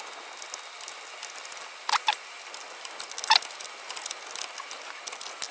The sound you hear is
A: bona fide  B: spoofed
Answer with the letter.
A